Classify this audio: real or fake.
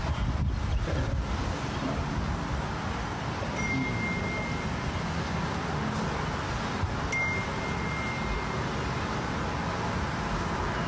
real